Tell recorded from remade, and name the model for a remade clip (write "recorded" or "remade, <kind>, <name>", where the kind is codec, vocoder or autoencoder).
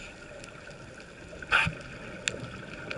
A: recorded